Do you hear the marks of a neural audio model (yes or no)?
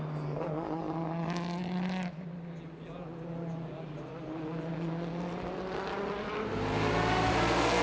no